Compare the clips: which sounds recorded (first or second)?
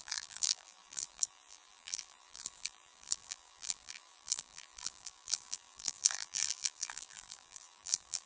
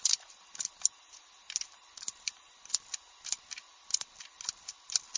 second